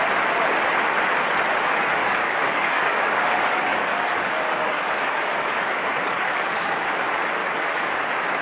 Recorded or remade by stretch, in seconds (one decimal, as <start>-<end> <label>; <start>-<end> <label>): 0.0-2.0 recorded; 2.0-6.9 remade; 6.9-7.4 recorded; 7.4-7.9 remade; 7.9-8.4 recorded